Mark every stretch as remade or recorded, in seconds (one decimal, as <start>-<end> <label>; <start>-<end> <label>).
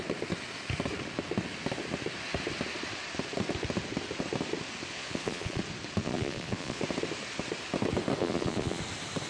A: 0.0-4.9 recorded; 4.9-5.6 remade; 5.6-6.0 recorded; 6.0-6.8 remade; 6.8-8.2 recorded; 8.2-8.8 remade; 8.8-9.3 recorded